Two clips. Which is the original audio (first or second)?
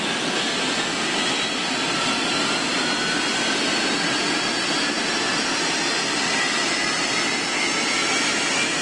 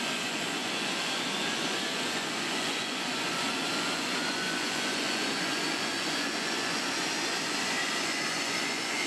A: first